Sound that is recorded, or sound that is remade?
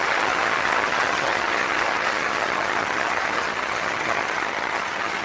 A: remade